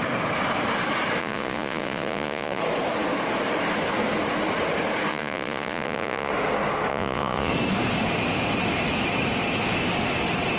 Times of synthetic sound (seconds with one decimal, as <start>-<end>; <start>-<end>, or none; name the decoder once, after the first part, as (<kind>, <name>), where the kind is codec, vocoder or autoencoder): 1.2-2.6 (vocoder, Vocos); 5.1-6.3; 6.9-7.5